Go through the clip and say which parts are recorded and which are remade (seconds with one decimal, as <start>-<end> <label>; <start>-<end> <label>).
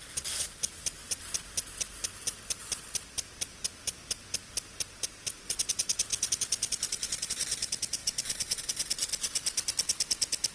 0.0-6.1 recorded; 6.1-7.3 remade; 7.3-10.5 recorded